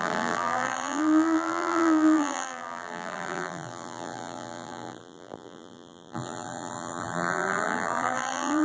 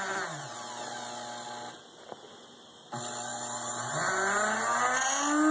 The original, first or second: second